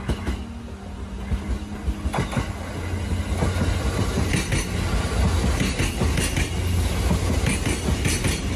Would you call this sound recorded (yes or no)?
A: yes